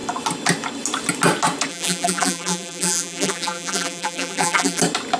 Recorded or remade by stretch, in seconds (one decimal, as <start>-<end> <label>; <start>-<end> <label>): 0.0-1.7 recorded; 1.7-4.8 remade; 4.8-5.2 recorded